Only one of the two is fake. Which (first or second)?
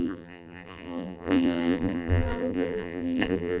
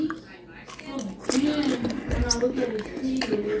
first